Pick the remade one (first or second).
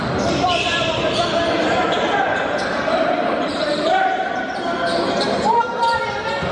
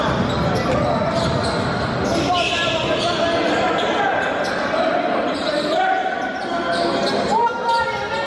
first